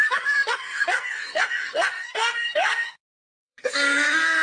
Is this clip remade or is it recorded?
remade